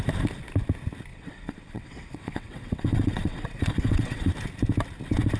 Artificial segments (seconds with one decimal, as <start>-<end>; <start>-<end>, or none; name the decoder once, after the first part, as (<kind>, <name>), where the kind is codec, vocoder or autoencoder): 1.1-4.3 (vocoder, WaveNeXt)